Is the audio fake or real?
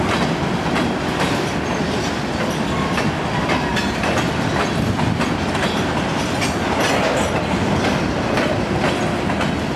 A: real